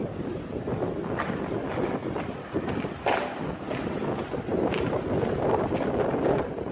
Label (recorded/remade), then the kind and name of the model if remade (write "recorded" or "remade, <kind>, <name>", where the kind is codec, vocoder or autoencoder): recorded